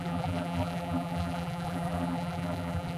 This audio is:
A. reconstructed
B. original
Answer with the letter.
A